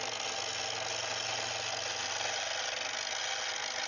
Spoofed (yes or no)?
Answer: no